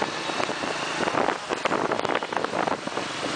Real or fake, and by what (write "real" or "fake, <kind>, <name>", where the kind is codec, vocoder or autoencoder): real